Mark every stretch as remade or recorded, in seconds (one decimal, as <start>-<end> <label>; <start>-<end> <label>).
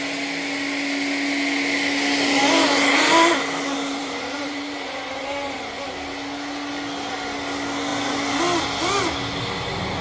0.0-4.0 recorded; 4.0-5.9 remade; 5.9-10.0 recorded